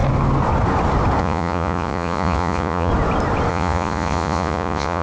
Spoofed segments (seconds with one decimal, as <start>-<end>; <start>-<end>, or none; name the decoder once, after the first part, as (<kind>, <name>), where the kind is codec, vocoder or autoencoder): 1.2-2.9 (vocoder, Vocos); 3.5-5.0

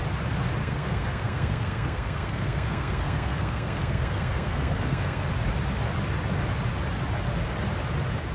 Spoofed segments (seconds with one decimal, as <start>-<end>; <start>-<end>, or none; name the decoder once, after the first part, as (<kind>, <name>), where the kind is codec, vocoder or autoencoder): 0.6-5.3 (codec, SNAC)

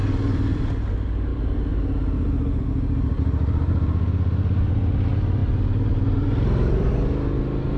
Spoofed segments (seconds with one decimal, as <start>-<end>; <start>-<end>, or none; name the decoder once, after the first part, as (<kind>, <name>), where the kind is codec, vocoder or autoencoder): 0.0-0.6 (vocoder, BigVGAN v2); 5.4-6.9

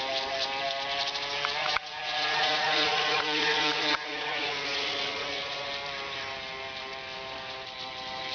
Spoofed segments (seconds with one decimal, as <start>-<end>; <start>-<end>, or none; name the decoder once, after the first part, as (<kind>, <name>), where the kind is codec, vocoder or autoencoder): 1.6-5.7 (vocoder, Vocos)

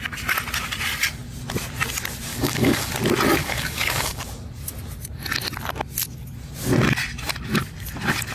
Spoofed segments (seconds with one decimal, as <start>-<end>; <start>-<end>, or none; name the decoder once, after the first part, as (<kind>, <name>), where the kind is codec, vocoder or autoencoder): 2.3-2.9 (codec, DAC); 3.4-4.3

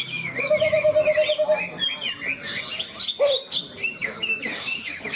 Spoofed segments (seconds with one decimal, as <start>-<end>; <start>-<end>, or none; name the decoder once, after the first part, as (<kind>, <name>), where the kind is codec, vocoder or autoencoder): 0.0-0.9 (autoencoder, DAC-VAE); 4.0-5.2

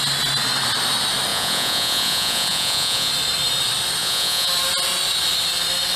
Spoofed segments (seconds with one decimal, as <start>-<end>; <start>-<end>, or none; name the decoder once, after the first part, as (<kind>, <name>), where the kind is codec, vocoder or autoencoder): 1.3-3.1 (vocoder, Vocos); 4.0-4.5